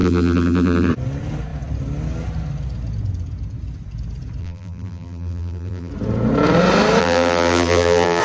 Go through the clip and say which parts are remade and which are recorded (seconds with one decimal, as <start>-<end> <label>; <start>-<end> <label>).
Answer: 0.0-0.9 remade; 0.9-4.4 recorded; 4.4-5.9 remade; 5.9-7.0 recorded; 7.0-8.2 remade